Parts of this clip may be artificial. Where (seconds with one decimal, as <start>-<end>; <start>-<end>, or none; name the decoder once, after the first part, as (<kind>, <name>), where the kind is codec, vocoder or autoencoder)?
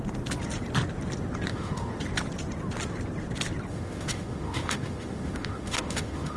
1.5-2.0 (autoencoder, DAC-VAE); 3.7-6.4